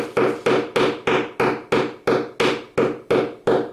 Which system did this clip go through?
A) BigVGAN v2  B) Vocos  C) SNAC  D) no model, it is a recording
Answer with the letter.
D